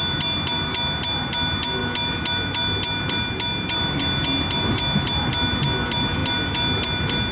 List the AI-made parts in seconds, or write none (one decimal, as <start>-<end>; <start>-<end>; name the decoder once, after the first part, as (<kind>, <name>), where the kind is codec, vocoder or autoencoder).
none